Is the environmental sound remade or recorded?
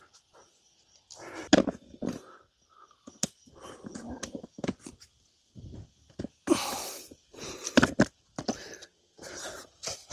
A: recorded